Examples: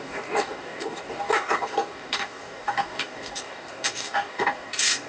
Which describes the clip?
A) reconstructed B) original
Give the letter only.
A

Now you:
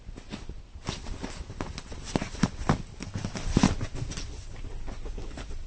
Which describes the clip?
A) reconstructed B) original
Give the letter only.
B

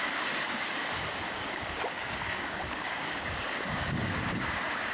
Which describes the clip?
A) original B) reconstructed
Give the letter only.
B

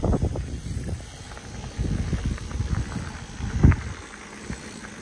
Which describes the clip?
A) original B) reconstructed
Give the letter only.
A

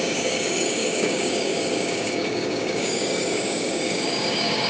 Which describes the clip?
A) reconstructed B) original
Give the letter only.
A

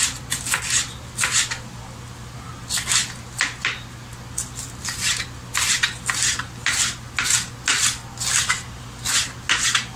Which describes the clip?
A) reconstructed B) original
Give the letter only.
B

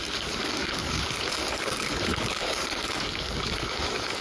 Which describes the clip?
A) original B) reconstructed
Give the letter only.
B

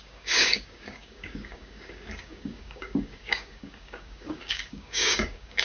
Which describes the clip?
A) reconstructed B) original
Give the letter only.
A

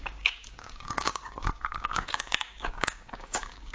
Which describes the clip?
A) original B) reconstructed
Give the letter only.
B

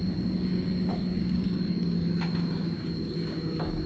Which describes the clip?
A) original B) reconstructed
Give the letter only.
B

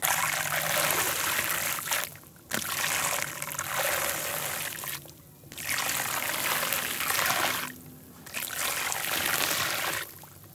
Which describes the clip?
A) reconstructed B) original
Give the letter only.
B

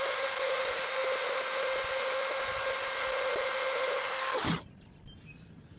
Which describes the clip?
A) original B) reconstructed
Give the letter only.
A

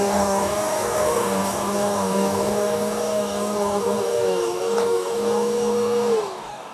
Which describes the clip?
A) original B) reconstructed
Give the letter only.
B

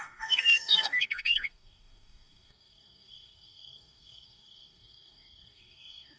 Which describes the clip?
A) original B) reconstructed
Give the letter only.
B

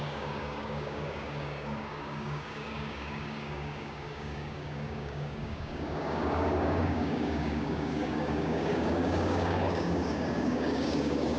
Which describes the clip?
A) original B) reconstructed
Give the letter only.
B